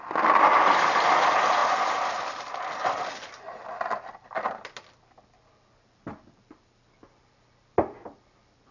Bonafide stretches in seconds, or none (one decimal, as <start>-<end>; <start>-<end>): 0.0-8.7